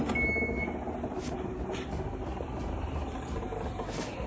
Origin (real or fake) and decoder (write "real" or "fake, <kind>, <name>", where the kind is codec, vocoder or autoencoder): real